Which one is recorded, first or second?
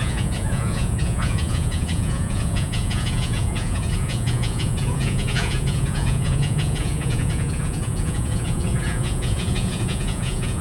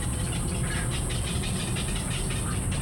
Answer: second